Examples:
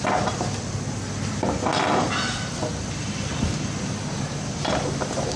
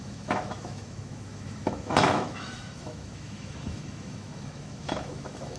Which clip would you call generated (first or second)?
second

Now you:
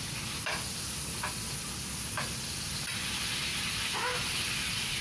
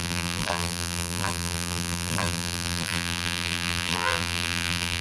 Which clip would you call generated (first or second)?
second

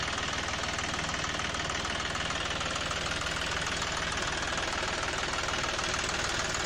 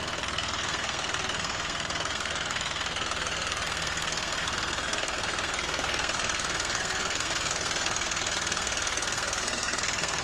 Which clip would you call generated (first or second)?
second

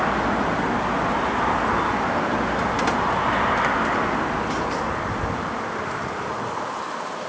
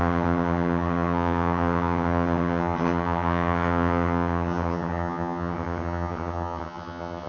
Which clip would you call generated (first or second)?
second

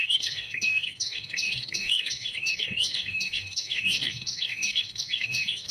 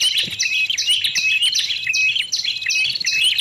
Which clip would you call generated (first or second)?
first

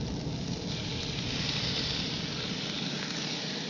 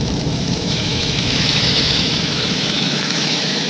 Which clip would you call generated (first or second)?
second